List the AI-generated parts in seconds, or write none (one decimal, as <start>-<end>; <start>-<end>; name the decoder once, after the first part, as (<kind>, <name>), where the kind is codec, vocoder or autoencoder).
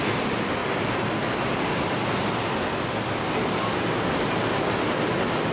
none